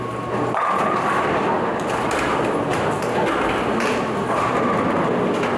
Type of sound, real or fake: real